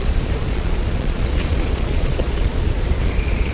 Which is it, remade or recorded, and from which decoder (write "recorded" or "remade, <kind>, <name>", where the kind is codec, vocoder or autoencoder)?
remade, vocoder, Vocos